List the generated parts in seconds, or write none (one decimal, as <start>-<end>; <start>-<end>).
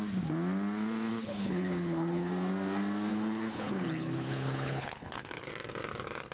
1.1-2.3; 3.1-5.5